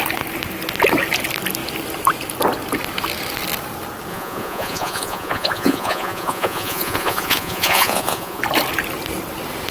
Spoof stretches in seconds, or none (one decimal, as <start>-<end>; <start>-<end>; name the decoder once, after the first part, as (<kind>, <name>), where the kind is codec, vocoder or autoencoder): 4.1-8.4 (vocoder, Vocos)